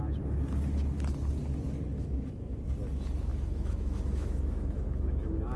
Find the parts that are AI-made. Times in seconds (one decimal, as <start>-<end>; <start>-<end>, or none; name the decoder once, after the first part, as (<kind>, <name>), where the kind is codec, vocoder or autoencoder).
1.9-2.6 (autoencoder, DAC-VAE); 3.3-5.6